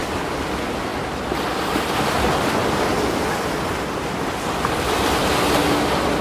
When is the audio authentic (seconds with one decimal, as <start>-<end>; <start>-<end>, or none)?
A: 0.0-6.2